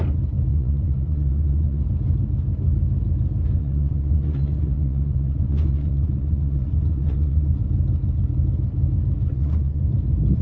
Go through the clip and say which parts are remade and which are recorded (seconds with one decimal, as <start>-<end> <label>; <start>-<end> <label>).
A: 0.0-0.5 recorded; 0.5-1.8 remade; 1.8-3.6 recorded; 3.6-7.5 remade; 7.5-9.3 recorded; 9.3-9.8 remade; 9.8-10.4 recorded